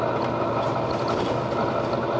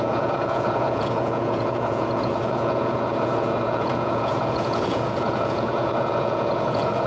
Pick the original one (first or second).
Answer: first